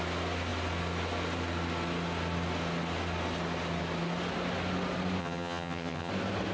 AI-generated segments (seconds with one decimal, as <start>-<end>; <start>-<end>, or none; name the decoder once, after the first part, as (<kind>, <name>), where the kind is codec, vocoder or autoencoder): 5.2-6.1 (vocoder, HiFi-GAN)